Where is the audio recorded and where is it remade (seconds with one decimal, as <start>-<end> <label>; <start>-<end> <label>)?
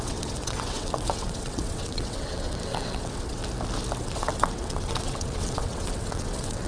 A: 0.0-3.4 remade; 3.4-4.0 recorded; 4.0-6.7 remade